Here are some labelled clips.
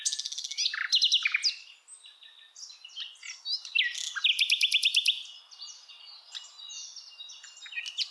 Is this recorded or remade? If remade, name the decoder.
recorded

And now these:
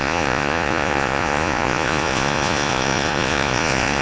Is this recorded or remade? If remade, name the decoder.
remade, vocoder, Vocos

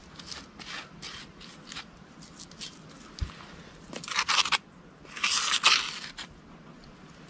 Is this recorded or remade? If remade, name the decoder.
recorded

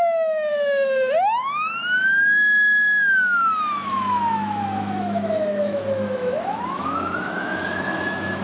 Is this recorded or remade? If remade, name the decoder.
remade, autoencoder, DAC-VAE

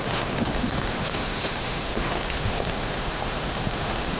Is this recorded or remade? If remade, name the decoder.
remade, autoencoder, DAC-VAE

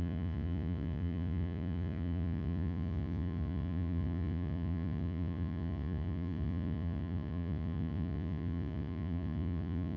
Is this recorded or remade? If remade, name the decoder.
remade, vocoder, Vocos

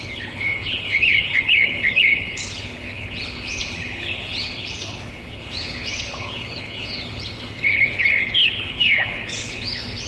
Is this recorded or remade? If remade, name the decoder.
remade, codec, HILCodec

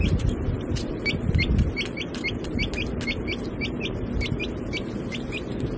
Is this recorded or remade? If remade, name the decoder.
remade, vocoder, BigVGAN v2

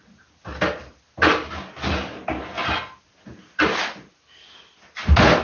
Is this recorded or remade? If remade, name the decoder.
recorded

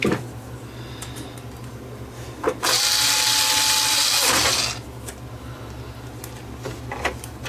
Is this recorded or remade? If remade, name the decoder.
recorded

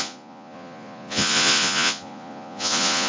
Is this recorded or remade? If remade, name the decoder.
remade, vocoder, Vocos